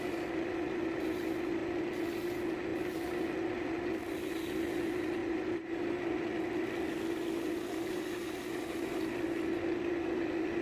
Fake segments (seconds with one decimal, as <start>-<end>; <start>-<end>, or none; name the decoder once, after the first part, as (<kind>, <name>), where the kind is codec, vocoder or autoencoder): 5.2-5.8 (vocoder, BigVGAN v2)